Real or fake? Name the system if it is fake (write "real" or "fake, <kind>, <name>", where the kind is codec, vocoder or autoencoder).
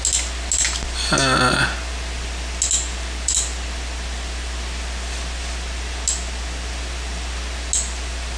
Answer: real